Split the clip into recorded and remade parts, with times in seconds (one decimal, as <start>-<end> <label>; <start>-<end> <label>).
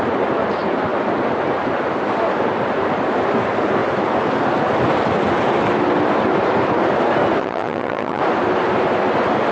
0.0-7.4 recorded; 7.4-8.2 remade; 8.2-9.5 recorded